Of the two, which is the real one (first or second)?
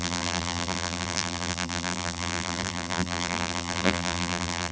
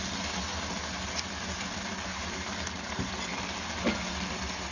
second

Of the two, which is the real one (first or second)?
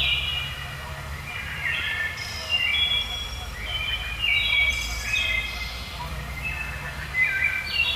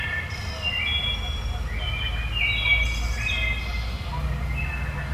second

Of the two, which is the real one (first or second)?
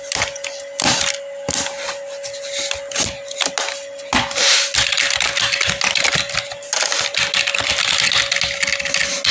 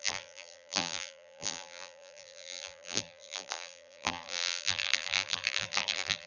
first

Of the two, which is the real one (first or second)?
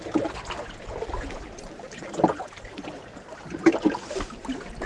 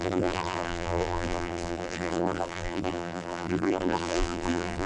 first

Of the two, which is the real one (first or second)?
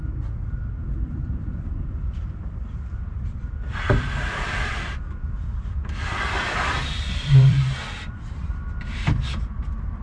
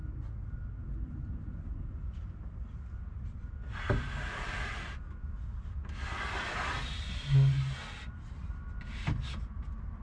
second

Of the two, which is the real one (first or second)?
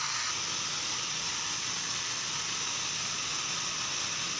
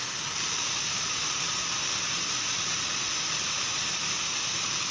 first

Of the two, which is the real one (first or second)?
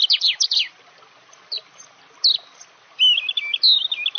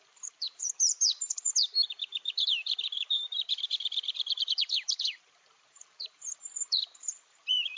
first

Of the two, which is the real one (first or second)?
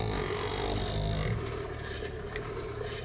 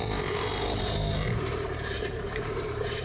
first